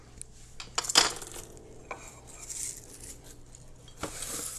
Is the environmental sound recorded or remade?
recorded